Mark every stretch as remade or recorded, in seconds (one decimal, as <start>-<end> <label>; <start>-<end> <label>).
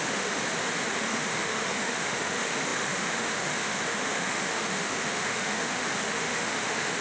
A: 0.0-0.4 remade; 0.4-0.9 recorded; 0.9-7.0 remade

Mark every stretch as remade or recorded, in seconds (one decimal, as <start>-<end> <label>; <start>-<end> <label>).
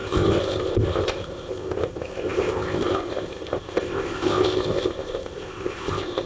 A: 0.0-6.3 remade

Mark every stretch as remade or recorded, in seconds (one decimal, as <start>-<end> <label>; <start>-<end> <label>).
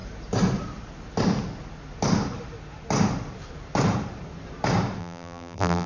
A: 0.0-5.0 recorded; 5.0-5.9 remade